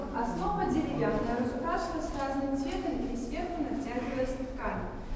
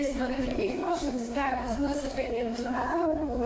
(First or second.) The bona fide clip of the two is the first